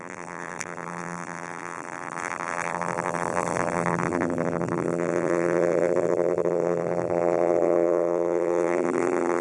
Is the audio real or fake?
fake